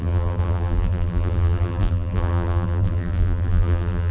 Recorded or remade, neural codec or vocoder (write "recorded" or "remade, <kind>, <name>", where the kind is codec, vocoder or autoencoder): remade, vocoder, BigVGAN v2